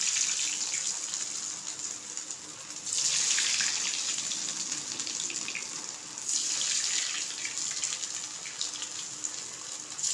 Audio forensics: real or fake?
real